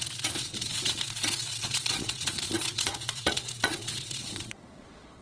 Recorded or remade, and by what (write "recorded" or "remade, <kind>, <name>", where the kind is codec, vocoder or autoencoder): remade, vocoder, Vocos